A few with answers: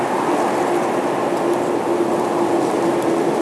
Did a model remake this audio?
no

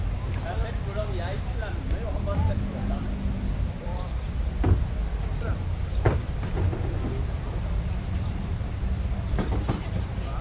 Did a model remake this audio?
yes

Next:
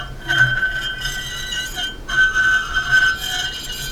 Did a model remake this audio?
no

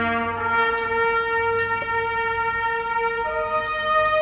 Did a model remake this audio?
no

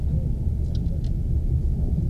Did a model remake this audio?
no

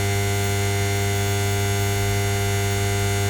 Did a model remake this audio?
no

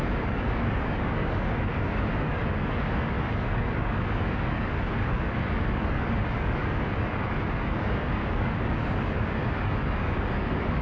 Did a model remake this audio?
yes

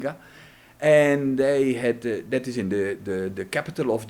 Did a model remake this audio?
no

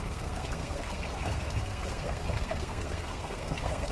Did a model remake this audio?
yes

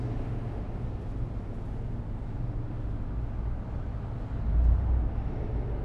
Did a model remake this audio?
no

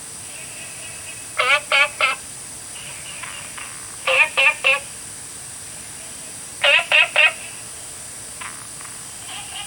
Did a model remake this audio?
no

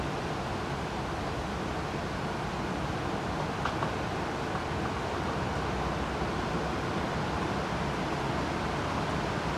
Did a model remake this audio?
no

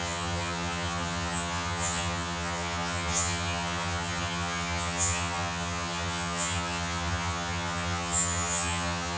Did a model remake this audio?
yes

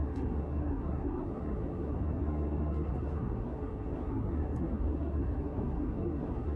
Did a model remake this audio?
yes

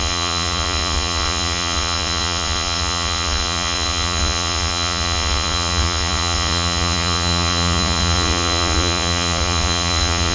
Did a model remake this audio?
yes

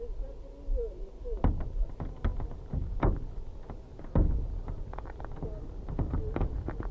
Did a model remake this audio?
no